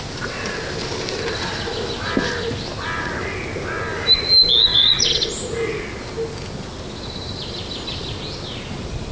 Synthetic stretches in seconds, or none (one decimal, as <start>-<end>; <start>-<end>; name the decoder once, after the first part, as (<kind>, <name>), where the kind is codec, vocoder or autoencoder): 4.7-5.3 (vocoder, Vocos)